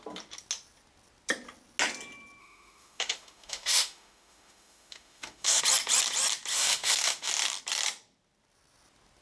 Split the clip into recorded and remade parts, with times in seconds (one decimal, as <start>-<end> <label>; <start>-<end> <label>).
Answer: 0.0-2.4 recorded; 2.4-5.6 remade; 5.6-6.5 recorded; 6.5-7.3 remade; 7.3-9.2 recorded